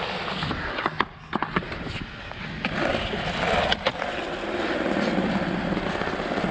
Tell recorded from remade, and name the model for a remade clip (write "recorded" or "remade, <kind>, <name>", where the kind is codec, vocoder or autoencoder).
recorded